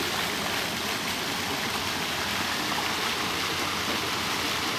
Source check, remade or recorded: recorded